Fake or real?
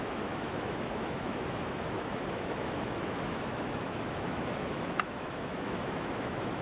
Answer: fake